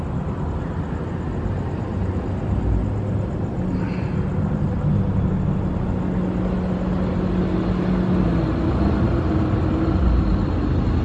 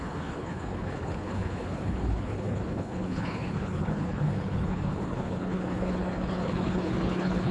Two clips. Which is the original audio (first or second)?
first